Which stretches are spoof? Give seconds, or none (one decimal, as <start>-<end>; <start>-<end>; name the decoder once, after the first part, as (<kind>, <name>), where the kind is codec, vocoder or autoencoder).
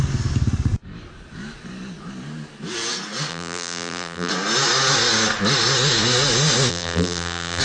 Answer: 3.3-4.3 (vocoder, BigVGAN v2); 6.7-7.6